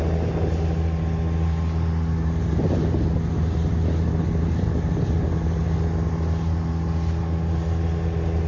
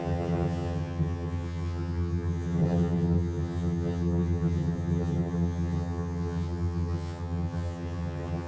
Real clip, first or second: first